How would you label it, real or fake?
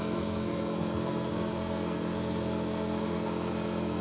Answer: fake